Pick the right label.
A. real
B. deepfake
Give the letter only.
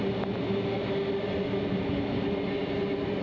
A